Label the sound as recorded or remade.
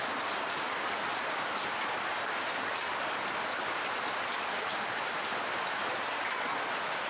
recorded